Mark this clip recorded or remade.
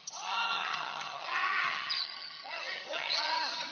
remade